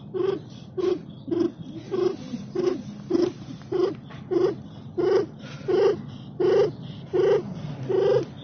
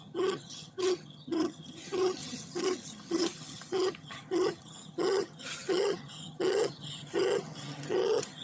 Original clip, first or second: first